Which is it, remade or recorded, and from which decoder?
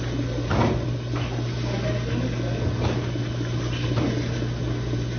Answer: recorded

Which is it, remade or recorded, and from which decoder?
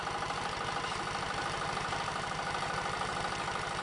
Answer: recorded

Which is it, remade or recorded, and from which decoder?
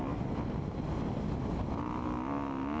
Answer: recorded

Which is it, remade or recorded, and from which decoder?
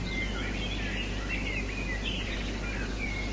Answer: recorded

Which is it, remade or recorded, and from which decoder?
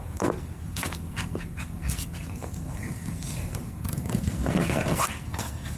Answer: remade, codec, SNAC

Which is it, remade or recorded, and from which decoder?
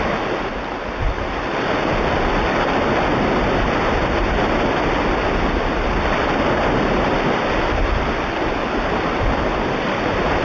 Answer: recorded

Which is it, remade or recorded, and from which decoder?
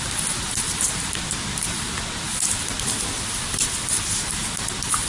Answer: recorded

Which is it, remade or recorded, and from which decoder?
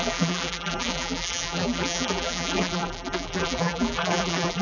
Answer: remade, vocoder, BigVGAN v2